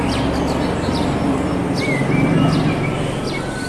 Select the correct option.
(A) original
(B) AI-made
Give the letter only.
A